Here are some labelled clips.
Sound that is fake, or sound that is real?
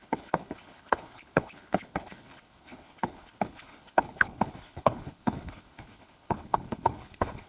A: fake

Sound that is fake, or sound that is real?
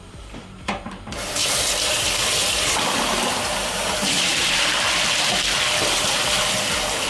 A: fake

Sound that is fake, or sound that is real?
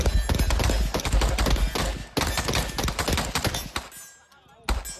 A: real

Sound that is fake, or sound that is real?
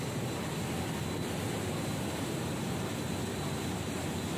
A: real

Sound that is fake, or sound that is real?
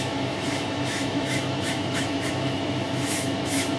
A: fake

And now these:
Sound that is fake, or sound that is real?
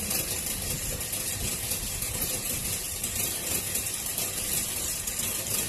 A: fake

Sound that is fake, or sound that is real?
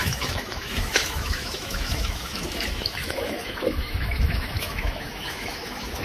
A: fake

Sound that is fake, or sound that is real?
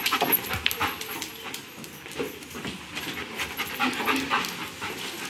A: real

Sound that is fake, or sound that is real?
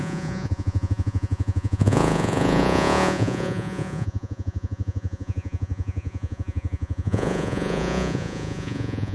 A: fake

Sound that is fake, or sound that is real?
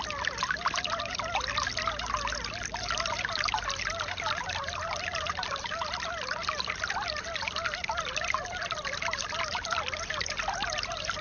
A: real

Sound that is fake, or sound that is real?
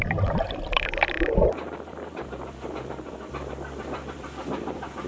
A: fake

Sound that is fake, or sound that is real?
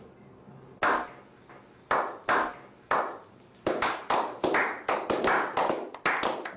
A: real